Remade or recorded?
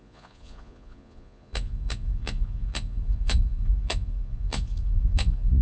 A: remade